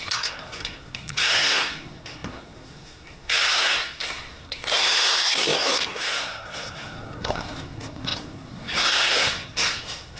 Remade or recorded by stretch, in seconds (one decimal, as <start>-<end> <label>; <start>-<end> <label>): 0.0-10.2 remade